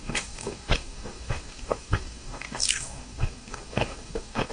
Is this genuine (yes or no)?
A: no